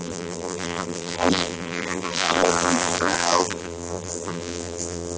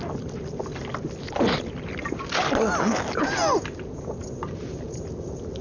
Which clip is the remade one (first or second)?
first